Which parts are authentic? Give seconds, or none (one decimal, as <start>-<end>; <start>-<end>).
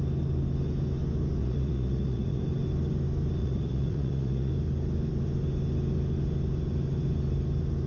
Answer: 0.0-1.4; 2.4-3.4; 4.5-7.9